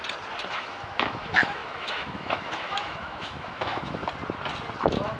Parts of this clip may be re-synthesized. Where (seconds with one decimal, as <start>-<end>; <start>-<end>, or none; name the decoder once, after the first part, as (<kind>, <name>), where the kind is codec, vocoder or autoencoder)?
0.5-4.0 (autoencoder, DAC-VAE); 4.8-5.2